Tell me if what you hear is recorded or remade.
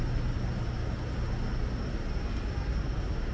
recorded